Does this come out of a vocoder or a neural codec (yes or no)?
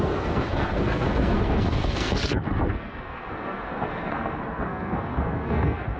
yes